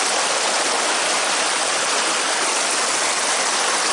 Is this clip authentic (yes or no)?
yes